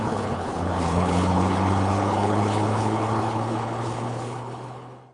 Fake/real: fake